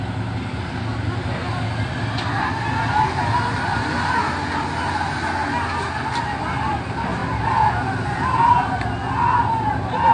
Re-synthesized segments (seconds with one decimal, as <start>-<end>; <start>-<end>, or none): none